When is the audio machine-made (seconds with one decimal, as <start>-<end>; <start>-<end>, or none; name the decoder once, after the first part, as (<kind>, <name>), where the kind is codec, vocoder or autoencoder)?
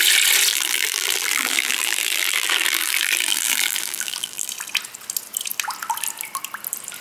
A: 0.5-4.5 (vocoder, BigVGAN v2)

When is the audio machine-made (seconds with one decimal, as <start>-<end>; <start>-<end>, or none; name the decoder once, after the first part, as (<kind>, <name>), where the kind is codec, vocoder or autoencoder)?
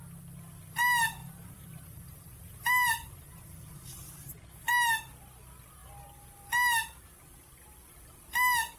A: 1.2-4.7 (vocoder, BigVGAN v2)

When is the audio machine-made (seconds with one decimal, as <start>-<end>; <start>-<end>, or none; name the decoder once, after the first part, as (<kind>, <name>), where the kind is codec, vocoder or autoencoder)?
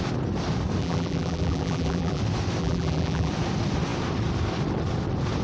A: 0.8-2.2 (vocoder, BigVGAN v2); 2.6-3.3